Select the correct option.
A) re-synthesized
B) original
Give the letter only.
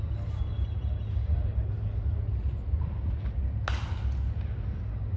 B